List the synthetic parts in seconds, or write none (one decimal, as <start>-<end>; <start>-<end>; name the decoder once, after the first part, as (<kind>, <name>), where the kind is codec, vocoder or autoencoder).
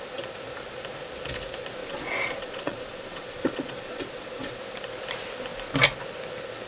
1.8-4.6 (vocoder, Vocos)